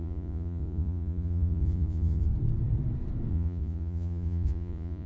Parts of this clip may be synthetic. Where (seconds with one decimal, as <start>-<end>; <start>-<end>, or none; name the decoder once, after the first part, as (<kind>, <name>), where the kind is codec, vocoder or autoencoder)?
0.0-2.3 (vocoder, Vocos); 3.3-5.1